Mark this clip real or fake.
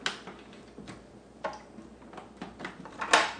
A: real